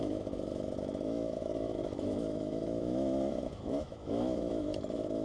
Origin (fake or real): fake